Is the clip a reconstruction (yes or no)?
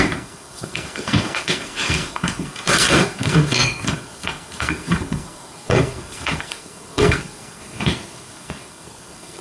yes